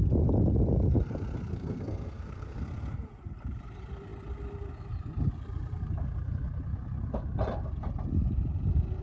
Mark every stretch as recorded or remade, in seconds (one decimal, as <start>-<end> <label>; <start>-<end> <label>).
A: 0.0-1.5 recorded; 1.5-2.6 remade; 2.6-9.0 recorded